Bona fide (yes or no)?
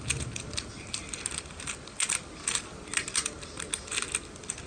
yes